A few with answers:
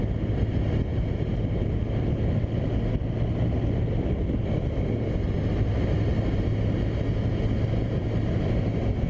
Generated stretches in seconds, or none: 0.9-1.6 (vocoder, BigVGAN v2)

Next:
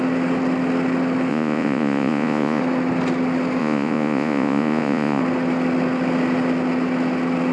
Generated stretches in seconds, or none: 1.3-2.6 (vocoder, Vocos); 3.6-5.2

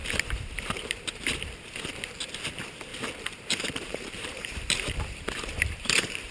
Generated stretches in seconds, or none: 0.0-1.5 (vocoder, BigVGAN v2); 2.9-6.3

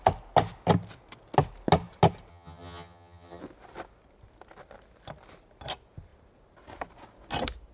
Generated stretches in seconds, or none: 2.3-3.4 (vocoder, HiFi-GAN)

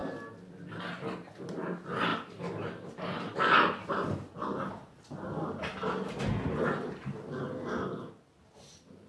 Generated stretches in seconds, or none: 2.1-3.9 (vocoder, BigVGAN v2)